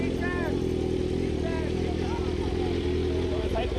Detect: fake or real real